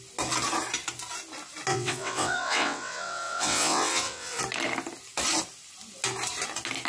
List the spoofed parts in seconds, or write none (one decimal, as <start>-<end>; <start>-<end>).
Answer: 1.7-4.4